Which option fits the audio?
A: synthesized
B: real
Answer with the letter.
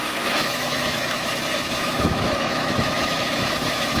A